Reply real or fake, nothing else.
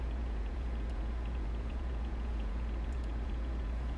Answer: fake